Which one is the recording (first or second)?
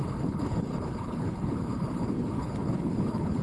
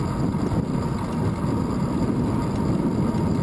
second